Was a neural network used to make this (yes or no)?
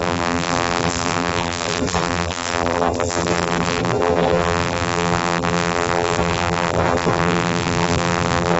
yes